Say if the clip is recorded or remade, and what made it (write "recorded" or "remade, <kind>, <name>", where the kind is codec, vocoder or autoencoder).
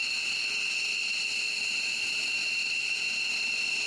recorded